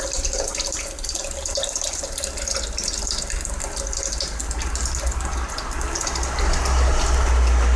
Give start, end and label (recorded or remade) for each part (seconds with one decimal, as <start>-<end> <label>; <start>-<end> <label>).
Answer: 0.0-7.8 recorded